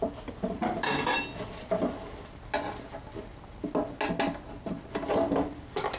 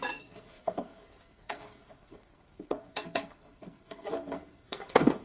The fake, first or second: second